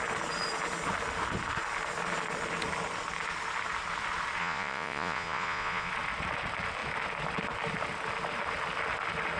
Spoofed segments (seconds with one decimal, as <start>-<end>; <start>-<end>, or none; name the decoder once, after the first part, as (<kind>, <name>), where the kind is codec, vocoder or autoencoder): 4.4-5.9 (vocoder, Vocos)